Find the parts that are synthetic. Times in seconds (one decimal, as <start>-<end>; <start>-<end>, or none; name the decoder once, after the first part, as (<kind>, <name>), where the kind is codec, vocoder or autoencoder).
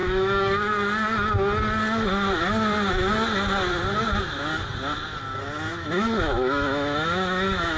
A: 0.0-0.7 (autoencoder, DAC-VAE); 5.7-7.8